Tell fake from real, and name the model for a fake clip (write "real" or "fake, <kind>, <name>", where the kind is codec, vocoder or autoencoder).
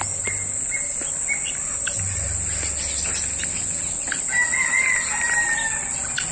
real